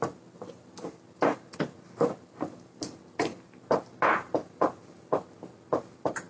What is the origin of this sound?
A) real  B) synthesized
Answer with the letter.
A